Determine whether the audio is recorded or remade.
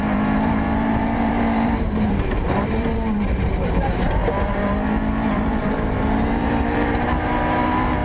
remade